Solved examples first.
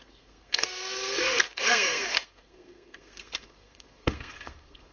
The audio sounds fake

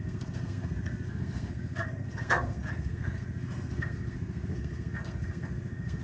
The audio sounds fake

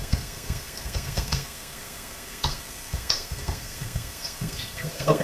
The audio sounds fake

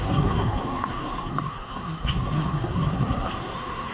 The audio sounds fake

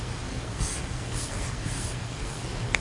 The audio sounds fake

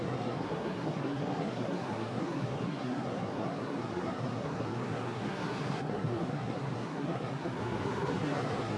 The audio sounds fake